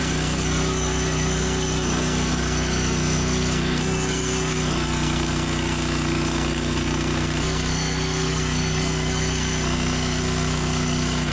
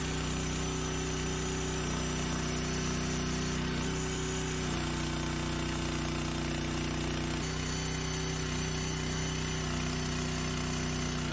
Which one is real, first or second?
second